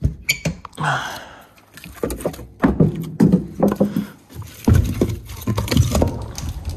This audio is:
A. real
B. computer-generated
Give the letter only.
A